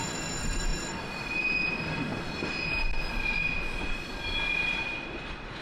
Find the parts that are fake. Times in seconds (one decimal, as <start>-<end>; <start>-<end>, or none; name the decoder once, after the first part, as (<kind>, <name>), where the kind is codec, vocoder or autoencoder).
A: none